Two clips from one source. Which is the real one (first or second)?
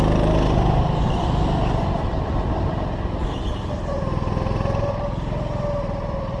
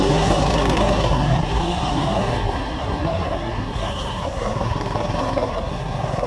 first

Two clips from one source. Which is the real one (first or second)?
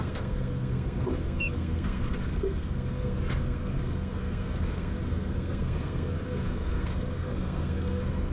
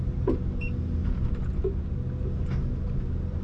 second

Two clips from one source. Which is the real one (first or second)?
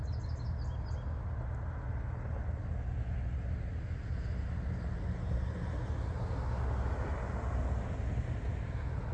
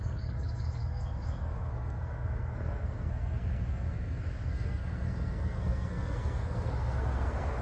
first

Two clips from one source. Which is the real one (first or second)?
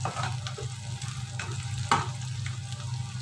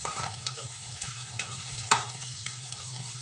first